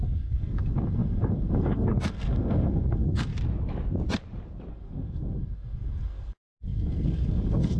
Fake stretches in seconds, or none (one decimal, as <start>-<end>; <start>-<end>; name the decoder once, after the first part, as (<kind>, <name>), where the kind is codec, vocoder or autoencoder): 0.0-3.3 (codec, SNAC); 4.7-7.8